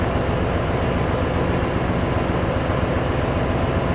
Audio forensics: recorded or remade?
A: recorded